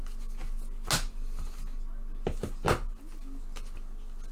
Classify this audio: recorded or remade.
recorded